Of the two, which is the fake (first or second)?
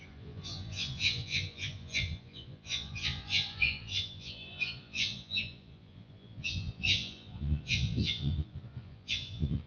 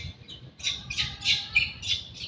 first